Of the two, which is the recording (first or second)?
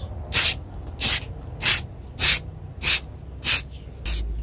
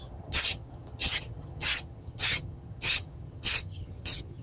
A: first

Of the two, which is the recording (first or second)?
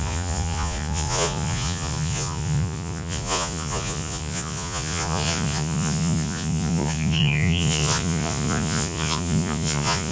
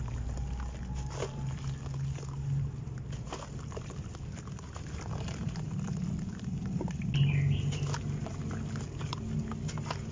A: second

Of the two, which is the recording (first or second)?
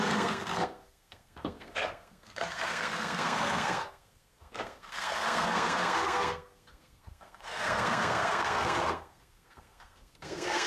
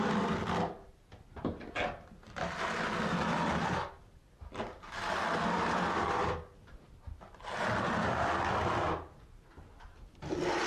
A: second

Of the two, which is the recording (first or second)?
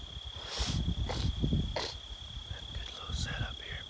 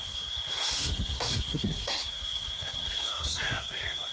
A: first